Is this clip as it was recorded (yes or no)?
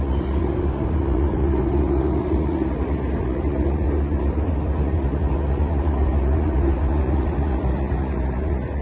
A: no